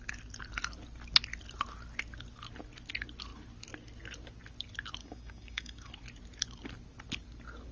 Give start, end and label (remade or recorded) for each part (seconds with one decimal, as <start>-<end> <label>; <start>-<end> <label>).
0.0-5.0 recorded; 5.0-5.9 remade; 5.9-7.7 recorded